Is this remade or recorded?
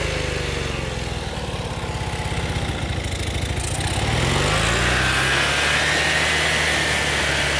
recorded